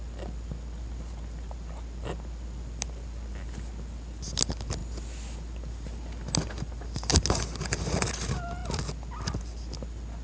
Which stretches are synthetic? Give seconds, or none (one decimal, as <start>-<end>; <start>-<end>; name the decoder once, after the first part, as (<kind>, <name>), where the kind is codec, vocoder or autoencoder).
none